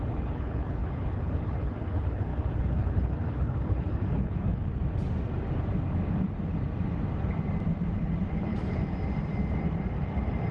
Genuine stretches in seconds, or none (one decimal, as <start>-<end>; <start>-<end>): 4.7-8.3; 8.8-10.5